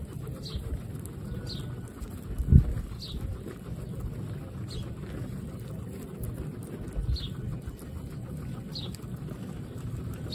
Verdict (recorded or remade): recorded